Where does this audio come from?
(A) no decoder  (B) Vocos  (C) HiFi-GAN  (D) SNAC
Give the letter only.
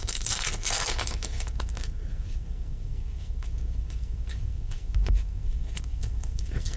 D